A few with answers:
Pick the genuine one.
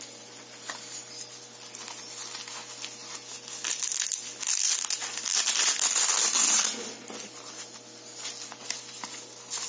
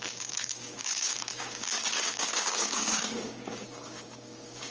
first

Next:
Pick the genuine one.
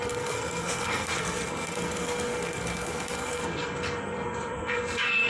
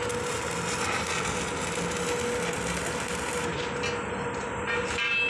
second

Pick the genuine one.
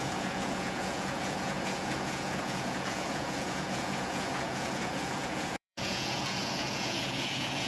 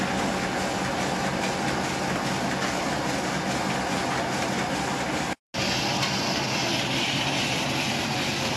second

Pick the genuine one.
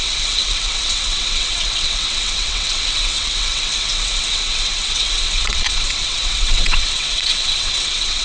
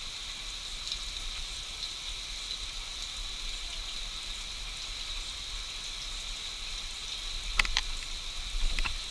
second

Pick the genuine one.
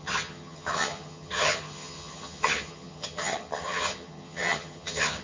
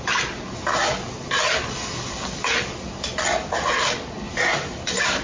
second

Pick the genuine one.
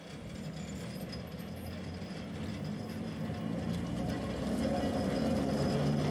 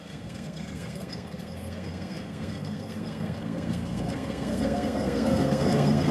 first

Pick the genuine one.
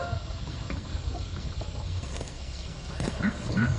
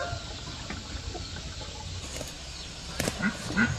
second